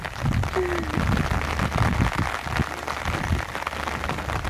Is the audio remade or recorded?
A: recorded